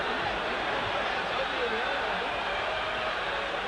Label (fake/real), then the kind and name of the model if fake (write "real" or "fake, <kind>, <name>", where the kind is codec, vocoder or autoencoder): fake, vocoder, BigVGAN v2